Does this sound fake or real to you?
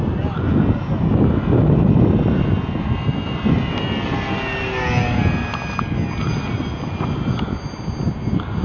real